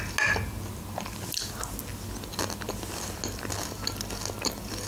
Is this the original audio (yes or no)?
yes